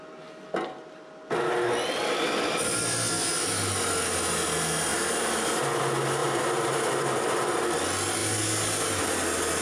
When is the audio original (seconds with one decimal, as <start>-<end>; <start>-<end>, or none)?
0.0-6.2; 7.2-9.6